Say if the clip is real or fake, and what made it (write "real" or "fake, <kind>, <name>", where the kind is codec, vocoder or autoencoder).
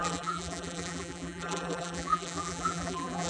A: fake, vocoder, BigVGAN v2